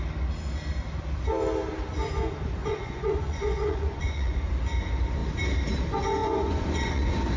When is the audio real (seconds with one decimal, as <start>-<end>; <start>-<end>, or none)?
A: 0.0-2.6; 4.5-6.2